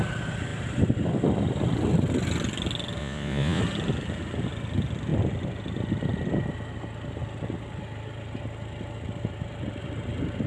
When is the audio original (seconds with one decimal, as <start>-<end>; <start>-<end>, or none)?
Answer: 0.0-3.0; 3.6-10.5

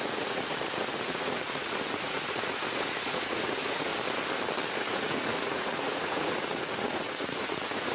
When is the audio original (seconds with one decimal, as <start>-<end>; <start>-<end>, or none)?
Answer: 3.9-4.7

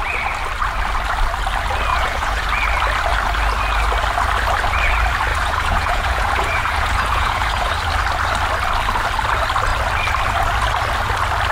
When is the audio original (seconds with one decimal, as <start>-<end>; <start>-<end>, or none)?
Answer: 0.0-1.9; 2.5-5.3; 7.7-11.5

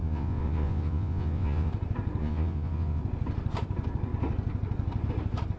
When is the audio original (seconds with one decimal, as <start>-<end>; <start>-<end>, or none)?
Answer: 1.7-2.2; 3.0-5.6

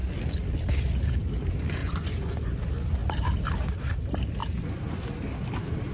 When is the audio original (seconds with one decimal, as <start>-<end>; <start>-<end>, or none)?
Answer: 0.0-1.8; 2.4-5.9

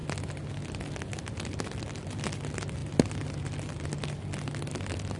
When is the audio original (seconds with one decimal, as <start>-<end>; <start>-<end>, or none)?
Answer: 0.0-5.2

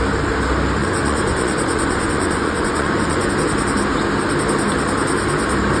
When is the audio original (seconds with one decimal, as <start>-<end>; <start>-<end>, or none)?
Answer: 0.0-0.8; 3.3-5.8

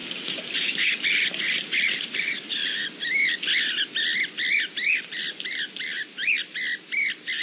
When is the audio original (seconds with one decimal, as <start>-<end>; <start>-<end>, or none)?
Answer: 0.0-7.4